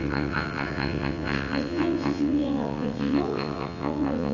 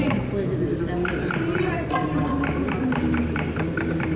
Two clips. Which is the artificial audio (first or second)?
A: first